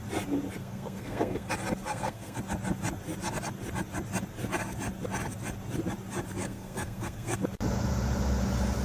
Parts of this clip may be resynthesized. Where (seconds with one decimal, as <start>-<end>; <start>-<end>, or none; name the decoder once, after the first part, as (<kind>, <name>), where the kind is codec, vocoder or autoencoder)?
0.6-1.5 (codec, SNAC); 1.9-2.4; 6.4-7.4